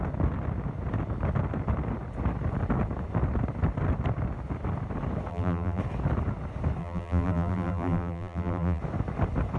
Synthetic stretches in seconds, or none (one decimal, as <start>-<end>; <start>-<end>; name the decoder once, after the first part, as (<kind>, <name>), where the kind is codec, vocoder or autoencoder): 5.3-5.8 (vocoder, BigVGAN v2); 6.8-8.8